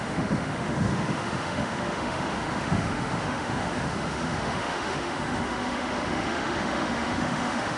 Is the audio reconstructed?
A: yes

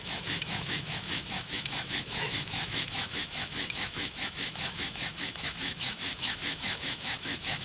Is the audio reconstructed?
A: yes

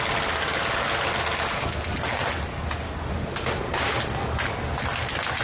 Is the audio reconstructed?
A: no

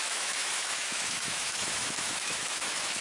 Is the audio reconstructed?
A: yes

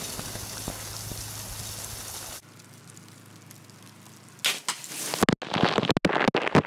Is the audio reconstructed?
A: no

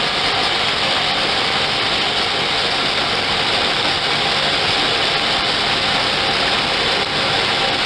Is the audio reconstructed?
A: no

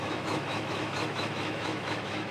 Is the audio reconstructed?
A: yes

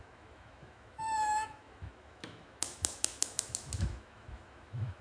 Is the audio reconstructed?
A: yes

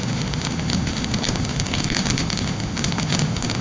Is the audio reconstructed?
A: yes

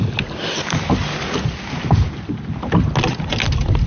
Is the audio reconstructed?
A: no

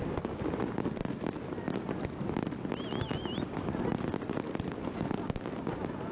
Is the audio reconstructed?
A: no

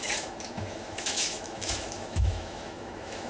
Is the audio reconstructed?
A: yes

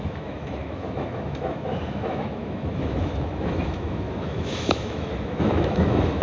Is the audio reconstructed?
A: yes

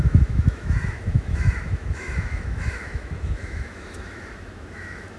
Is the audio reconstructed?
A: yes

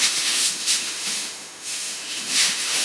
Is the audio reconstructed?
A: yes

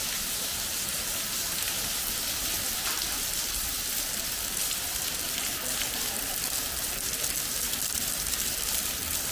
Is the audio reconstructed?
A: no